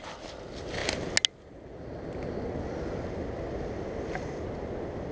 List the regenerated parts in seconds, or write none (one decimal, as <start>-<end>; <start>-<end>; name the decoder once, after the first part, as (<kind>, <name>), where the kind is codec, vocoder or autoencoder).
none